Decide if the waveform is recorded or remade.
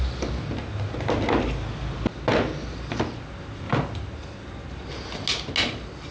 recorded